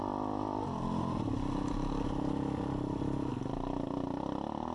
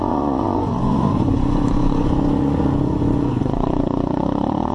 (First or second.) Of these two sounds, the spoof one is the second